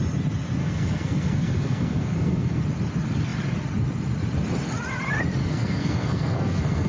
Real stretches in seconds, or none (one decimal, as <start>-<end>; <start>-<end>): 0.0-0.6; 2.6-5.4